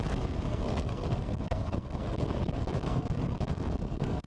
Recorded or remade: remade